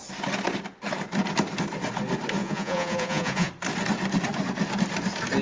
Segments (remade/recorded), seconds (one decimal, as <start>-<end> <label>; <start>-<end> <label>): 0.0-2.4 recorded; 2.4-3.5 remade; 3.5-5.4 recorded